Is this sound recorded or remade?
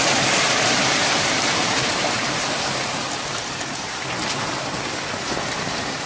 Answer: remade